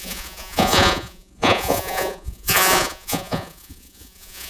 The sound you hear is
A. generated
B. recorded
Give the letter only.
A